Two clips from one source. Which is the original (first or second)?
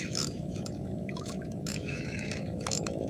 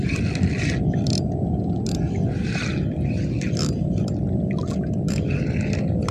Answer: second